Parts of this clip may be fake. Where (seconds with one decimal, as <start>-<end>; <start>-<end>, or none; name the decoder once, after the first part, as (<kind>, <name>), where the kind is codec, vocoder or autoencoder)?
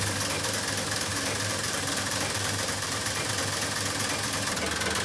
1.1-3.3 (vocoder, BigVGAN v2)